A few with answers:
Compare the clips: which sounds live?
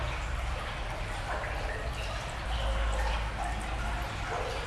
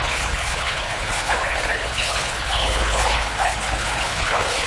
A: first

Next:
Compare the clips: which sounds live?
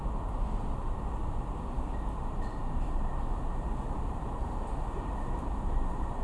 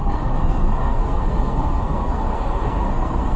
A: first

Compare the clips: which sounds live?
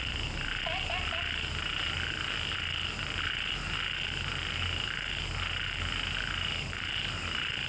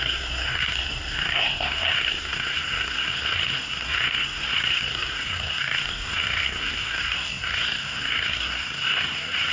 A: first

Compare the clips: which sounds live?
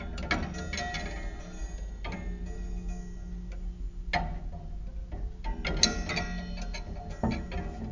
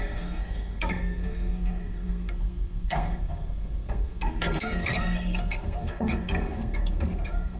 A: first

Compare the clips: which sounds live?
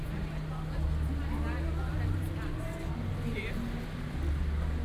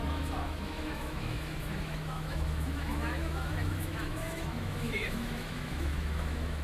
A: first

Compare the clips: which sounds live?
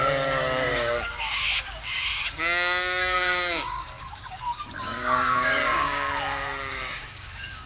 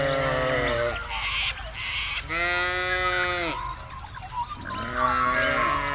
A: second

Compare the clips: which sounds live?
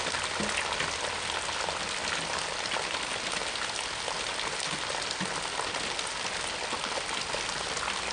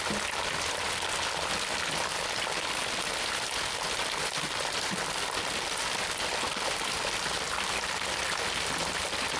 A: first